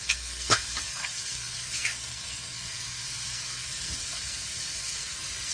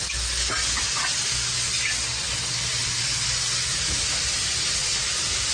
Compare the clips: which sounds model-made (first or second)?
first